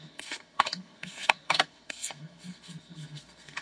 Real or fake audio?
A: fake